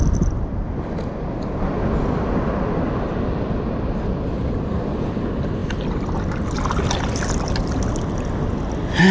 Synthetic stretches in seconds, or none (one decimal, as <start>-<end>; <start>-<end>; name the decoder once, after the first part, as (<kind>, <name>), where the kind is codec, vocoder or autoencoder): none